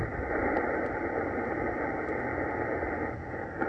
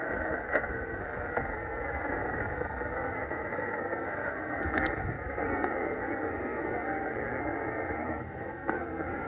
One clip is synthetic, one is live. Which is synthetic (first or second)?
second